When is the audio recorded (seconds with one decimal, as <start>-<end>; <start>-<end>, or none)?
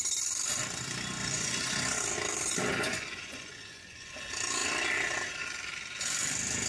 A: 0.0-1.2; 2.0-2.9; 4.1-6.7